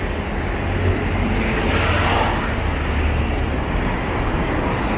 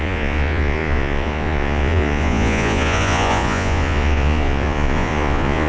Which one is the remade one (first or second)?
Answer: second